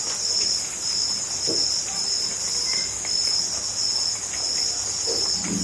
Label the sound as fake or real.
real